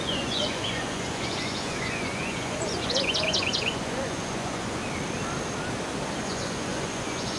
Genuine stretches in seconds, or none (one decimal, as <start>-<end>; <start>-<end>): 4.8-6.2

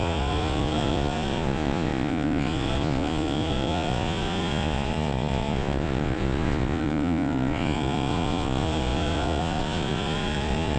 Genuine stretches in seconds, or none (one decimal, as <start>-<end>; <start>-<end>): none

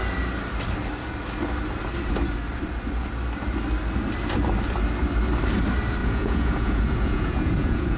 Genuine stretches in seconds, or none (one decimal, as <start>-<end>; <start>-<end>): 0.0-6.0

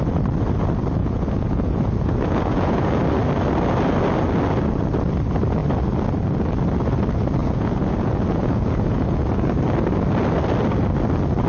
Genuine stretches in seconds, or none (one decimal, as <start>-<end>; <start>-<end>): 0.0-1.0; 3.0-7.4; 9.6-11.5